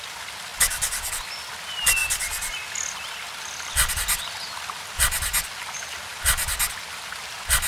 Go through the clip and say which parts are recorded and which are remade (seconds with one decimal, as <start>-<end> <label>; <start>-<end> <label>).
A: 0.0-7.7 recorded